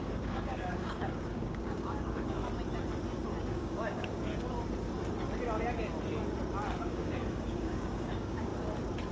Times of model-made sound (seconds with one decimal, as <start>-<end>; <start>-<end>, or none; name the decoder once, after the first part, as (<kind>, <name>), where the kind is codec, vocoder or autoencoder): 0.0-2.4 (codec, DAC); 3.5-4.3; 6.8-8.5